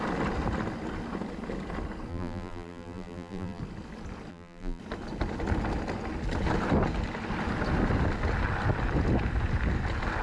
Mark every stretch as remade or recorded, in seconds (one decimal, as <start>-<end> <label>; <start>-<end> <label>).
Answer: 0.0-2.1 recorded; 2.1-3.6 remade; 3.6-4.3 recorded; 4.3-4.8 remade; 4.8-10.2 recorded